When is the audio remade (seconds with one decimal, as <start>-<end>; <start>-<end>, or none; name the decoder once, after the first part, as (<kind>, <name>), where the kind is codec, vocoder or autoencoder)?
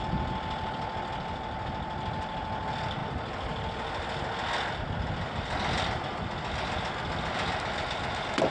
none